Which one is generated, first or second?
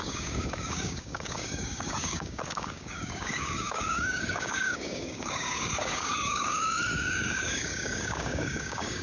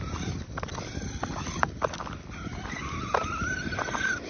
first